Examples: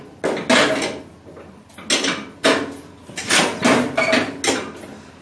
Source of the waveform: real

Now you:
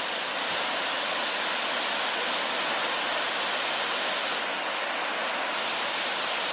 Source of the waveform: real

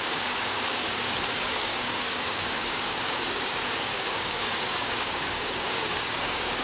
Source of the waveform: fake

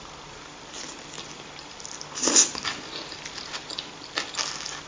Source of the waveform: real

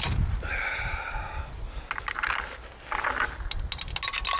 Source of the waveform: real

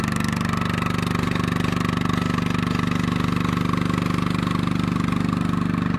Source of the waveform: real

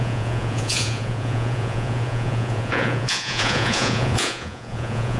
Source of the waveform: fake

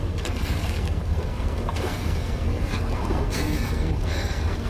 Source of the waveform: fake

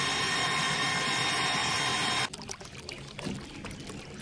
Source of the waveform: real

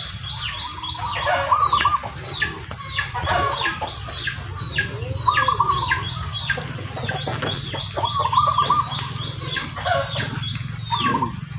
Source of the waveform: real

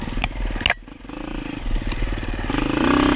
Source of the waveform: real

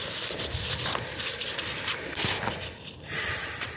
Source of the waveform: fake